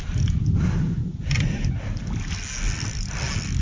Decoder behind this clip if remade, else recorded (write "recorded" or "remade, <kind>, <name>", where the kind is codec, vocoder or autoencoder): recorded